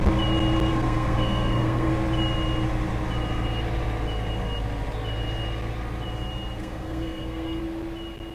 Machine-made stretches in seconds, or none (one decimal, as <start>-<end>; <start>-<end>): 0.7-1.9; 6.6-7.6